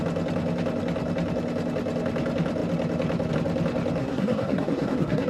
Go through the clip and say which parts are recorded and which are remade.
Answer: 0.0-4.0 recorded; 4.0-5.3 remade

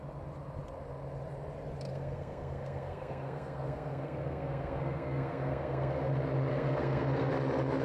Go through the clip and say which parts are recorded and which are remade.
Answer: 0.0-1.9 recorded; 1.9-6.1 remade; 6.1-6.5 recorded; 6.5-7.3 remade; 7.3-7.8 recorded

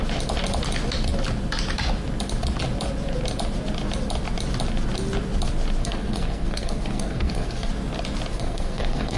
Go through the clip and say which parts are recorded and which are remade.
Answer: 0.0-5.8 recorded; 5.8-7.7 remade; 7.7-8.3 recorded; 8.3-9.2 remade

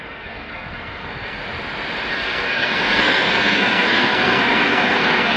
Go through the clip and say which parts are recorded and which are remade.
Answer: 0.0-1.4 remade; 1.4-2.1 recorded; 2.1-5.4 remade